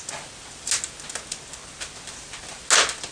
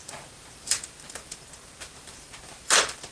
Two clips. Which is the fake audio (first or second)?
second